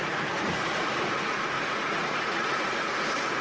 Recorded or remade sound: remade